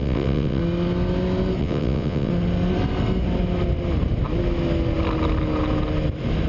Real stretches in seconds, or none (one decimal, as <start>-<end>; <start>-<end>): 0.6-1.6; 2.3-6.5